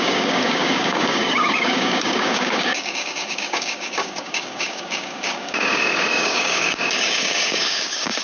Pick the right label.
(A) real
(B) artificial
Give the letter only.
B